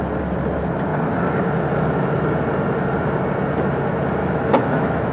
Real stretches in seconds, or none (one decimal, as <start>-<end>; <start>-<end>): 0.0-4.2